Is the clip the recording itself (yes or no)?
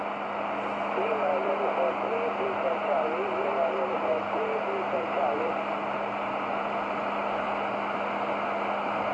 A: yes